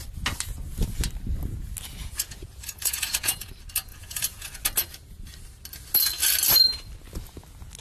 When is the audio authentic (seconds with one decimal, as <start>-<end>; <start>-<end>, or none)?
0.0-2.0; 3.5-3.9; 4.6-7.8